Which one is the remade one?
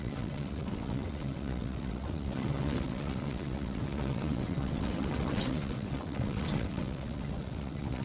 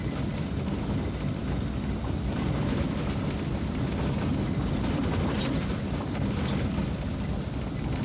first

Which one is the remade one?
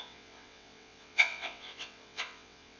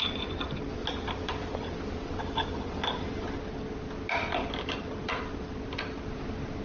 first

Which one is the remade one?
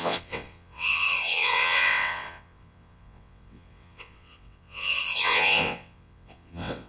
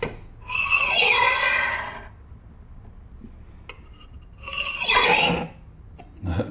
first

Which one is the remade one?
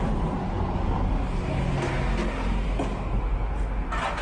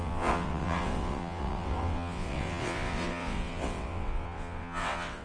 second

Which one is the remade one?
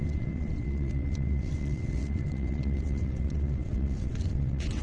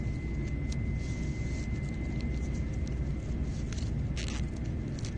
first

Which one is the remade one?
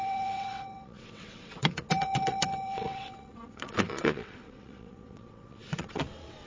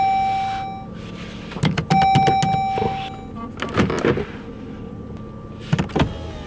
first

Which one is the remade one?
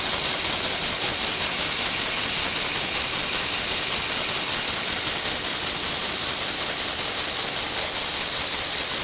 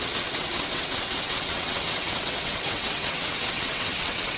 second